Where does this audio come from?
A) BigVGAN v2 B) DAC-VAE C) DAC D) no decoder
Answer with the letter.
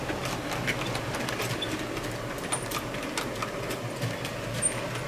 D